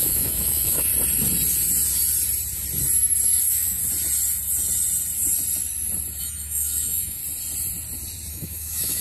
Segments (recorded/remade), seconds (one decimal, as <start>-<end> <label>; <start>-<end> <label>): 0.0-0.9 remade; 0.9-3.4 recorded; 3.4-3.8 remade; 3.8-6.2 recorded; 6.2-7.2 remade; 7.2-8.3 recorded; 8.3-9.0 remade